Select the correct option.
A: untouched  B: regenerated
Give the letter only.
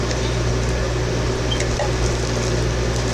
A